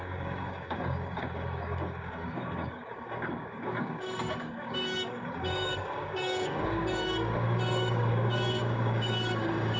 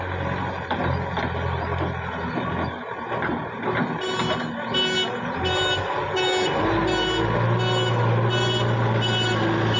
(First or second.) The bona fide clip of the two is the second